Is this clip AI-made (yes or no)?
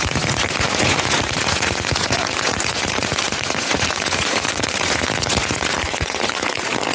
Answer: yes